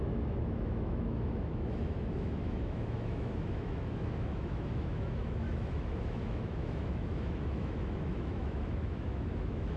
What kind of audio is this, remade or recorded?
remade